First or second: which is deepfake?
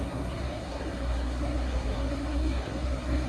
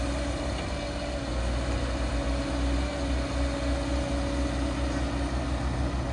first